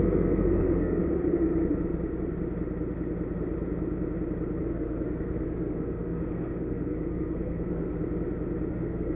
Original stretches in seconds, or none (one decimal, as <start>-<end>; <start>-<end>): 1.0-4.6; 8.0-8.7